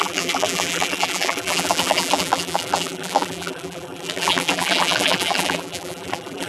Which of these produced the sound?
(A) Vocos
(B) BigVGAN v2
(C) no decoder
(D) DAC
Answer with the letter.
B